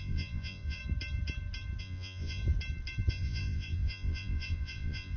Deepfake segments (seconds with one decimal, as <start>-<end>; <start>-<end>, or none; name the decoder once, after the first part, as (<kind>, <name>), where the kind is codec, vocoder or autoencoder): 0.0-0.8 (vocoder, Vocos); 1.8-2.4; 3.1-5.2